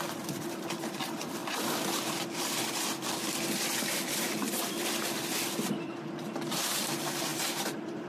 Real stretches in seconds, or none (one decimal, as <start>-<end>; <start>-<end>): none